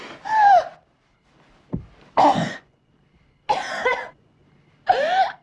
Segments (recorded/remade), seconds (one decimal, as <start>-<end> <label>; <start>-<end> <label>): 0.0-2.3 recorded; 2.3-2.9 remade; 2.9-3.9 recorded; 3.9-4.5 remade; 4.5-5.4 recorded